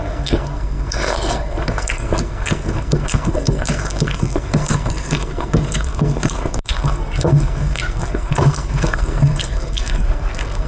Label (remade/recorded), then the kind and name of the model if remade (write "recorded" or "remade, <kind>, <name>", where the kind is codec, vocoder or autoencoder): remade, codec, SNAC